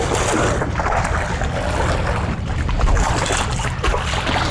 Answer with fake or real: real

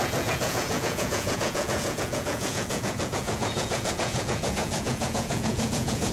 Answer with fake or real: fake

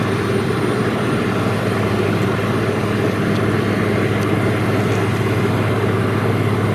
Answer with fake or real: real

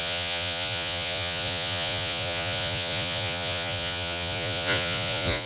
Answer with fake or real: fake